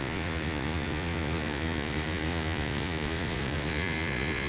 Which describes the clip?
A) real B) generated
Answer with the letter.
B